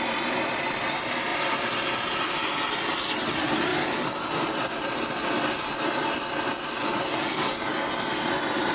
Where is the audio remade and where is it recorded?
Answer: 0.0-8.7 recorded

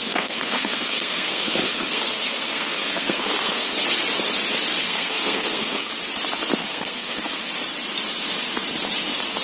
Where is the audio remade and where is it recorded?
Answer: 0.0-3.8 remade; 3.8-4.8 recorded; 4.8-5.9 remade; 5.9-6.6 recorded; 6.6-7.5 remade; 7.5-9.4 recorded